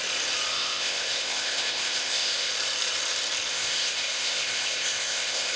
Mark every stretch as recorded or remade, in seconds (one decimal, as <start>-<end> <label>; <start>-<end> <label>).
0.0-0.5 recorded; 0.5-2.5 remade; 2.5-3.5 recorded; 3.5-5.6 remade